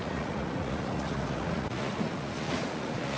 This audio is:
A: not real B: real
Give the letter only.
A